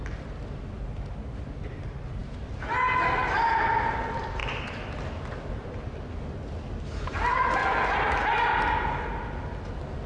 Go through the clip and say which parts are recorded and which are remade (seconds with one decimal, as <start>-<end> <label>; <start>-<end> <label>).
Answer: 0.0-10.1 recorded

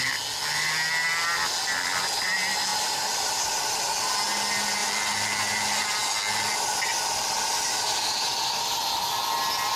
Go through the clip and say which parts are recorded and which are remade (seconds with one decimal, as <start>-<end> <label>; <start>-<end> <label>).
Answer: 0.0-2.7 recorded; 2.7-3.8 remade; 3.8-9.8 recorded

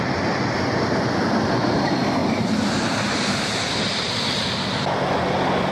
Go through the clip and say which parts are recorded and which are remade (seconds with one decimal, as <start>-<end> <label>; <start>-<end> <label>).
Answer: 0.0-5.7 recorded

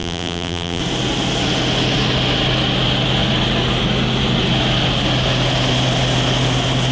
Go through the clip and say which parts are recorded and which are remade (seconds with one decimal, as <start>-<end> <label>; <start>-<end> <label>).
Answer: 0.0-0.8 remade; 0.8-6.9 recorded

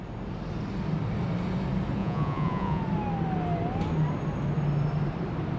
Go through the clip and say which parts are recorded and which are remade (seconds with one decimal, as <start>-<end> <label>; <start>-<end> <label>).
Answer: 0.0-2.0 recorded; 2.0-2.8 remade; 2.8-5.6 recorded

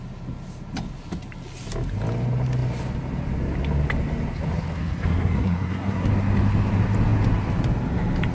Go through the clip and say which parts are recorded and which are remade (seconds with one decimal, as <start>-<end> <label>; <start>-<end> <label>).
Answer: 0.0-4.8 recorded; 4.8-6.1 remade; 6.1-8.3 recorded

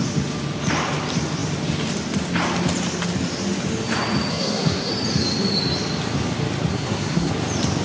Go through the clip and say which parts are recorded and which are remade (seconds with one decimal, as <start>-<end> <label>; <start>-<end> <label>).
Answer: 0.0-4.3 recorded; 4.3-4.9 remade; 4.9-6.7 recorded; 6.7-7.3 remade; 7.3-7.8 recorded